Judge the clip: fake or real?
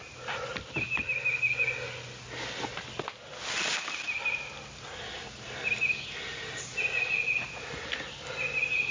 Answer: real